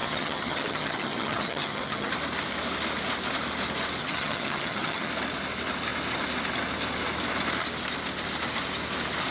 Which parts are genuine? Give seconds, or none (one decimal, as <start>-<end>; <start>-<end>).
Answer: 2.1-4.0; 5.1-9.3